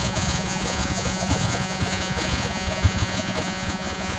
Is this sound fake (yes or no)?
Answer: yes